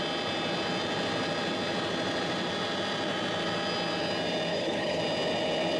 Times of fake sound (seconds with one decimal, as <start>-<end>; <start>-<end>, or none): 4.5-5.0